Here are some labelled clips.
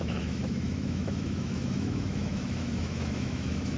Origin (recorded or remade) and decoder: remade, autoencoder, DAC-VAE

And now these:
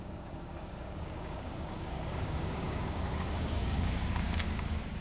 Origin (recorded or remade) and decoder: remade, codec, DAC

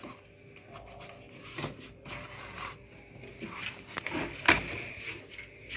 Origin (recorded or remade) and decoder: recorded